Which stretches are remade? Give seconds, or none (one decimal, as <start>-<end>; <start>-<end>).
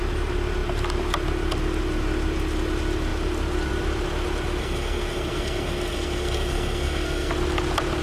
4.6-7.3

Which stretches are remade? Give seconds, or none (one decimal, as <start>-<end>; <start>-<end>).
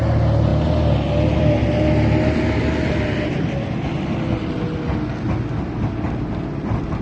none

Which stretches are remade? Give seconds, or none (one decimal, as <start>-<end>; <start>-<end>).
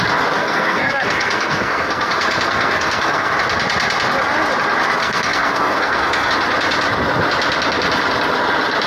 0.4-3.3; 5.0-6.3